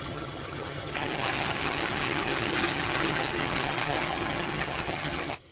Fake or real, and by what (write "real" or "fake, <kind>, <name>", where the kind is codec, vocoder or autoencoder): fake, vocoder, HiFi-GAN